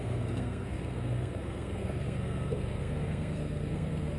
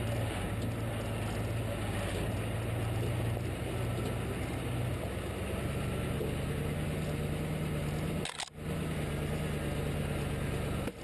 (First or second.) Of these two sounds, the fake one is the first